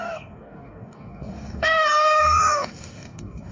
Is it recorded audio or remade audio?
remade